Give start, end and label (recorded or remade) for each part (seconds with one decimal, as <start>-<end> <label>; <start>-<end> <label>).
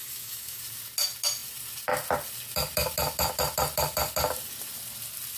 0.0-0.6 remade; 0.6-5.4 recorded